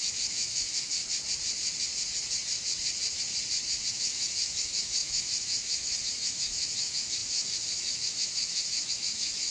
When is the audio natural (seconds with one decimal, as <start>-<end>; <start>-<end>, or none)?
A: 1.0-3.9